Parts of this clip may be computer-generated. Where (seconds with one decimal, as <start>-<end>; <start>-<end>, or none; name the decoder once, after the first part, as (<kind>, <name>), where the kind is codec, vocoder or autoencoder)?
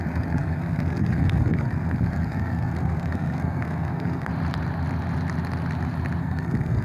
0.0-4.3 (codec, SNAC); 6.2-6.8